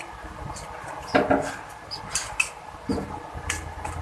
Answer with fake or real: real